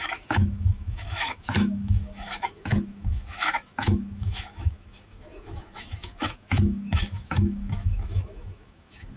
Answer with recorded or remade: remade